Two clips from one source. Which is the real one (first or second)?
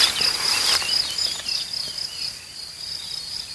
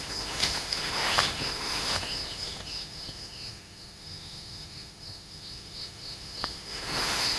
first